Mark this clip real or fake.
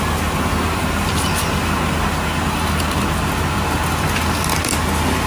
real